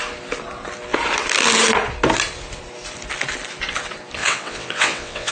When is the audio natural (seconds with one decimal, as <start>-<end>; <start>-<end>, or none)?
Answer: 0.0-4.2